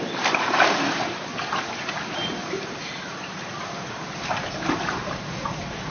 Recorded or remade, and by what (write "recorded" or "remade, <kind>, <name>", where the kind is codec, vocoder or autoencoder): remade, vocoder, BigVGAN v2